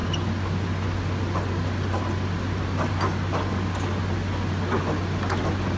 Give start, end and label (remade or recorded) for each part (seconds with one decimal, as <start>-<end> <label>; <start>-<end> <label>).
0.0-5.8 recorded